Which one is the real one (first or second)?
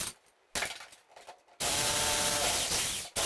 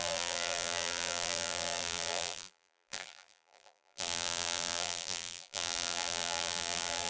first